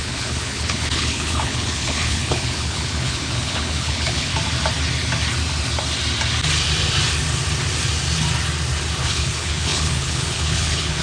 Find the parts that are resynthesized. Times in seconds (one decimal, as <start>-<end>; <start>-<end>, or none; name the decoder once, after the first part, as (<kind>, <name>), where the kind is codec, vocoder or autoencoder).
0.0-4.3 (codec, HILCodec); 9.0-11.0